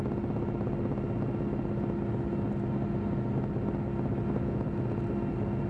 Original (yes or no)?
yes